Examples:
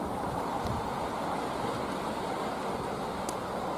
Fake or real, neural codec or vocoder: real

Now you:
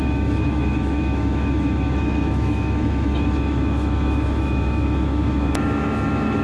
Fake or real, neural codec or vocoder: fake, autoencoder, DAC-VAE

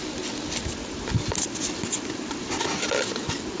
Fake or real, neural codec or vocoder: real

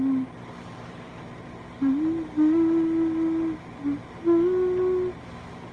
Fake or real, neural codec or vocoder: real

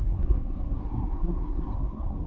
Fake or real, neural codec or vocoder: fake, codec, SNAC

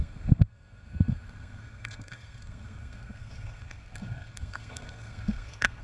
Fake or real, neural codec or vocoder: fake, codec, SNAC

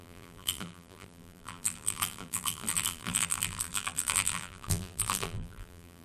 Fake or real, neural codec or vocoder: fake, vocoder, BigVGAN v2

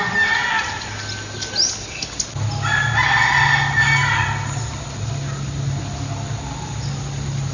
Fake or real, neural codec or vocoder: real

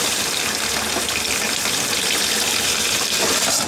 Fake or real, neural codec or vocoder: fake, vocoder, BigVGAN v2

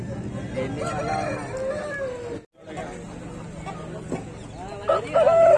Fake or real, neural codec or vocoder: real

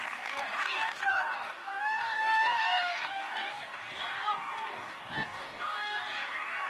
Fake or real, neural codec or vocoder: fake, codec, DAC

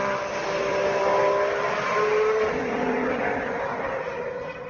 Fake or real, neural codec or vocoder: real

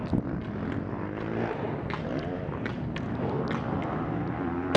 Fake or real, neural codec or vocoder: real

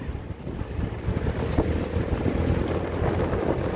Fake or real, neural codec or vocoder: real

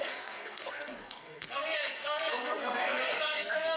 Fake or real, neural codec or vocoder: fake, codec, SNAC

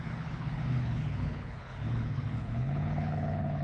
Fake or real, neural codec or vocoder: fake, codec, HILCodec